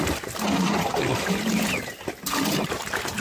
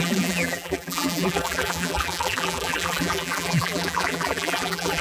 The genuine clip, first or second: first